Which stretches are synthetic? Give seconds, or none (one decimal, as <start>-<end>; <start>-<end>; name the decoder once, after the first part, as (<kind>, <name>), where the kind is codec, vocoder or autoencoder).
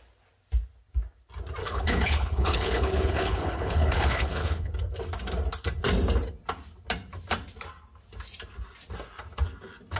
1.6-4.7 (codec, HILCodec)